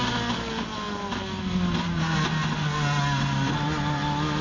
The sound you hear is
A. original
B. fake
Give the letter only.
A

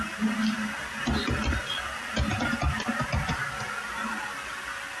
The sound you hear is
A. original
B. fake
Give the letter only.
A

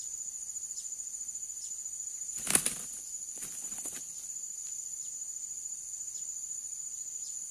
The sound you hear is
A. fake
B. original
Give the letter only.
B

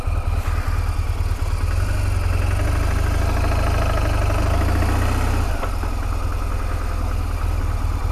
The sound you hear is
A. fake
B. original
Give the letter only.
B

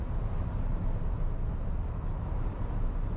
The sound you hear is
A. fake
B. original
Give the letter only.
B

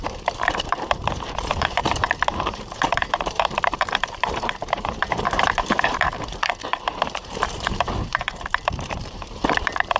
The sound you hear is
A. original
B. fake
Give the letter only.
B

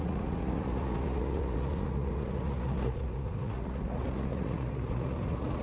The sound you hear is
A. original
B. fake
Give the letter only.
B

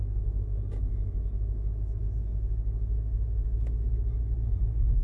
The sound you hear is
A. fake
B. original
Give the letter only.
A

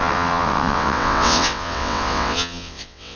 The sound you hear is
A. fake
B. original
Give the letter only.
A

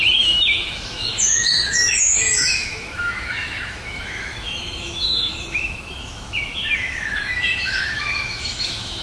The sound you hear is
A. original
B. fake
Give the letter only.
B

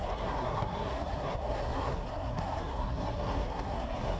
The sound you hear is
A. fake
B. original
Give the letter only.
A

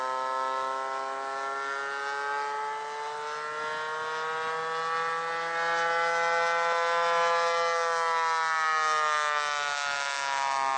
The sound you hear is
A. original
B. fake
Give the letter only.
A